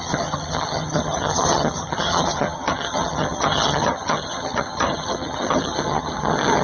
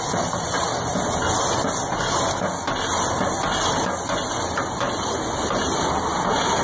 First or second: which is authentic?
second